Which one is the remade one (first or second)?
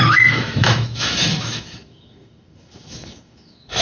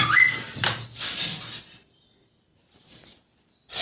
first